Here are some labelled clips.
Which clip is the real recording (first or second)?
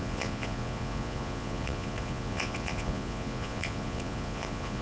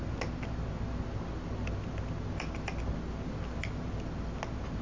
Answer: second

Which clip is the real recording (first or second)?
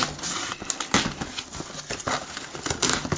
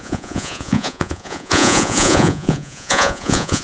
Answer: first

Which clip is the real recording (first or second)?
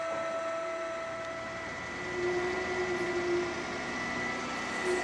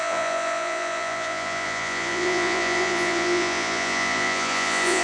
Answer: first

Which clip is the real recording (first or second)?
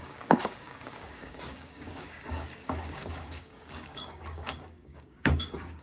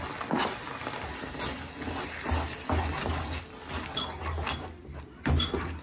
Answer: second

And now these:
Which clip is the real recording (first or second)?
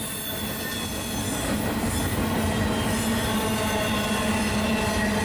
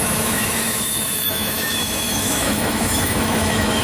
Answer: first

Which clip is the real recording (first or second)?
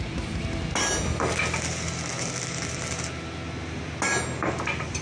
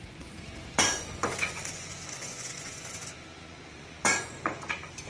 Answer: first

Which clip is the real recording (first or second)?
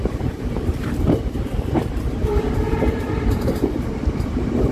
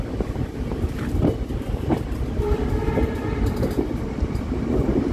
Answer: second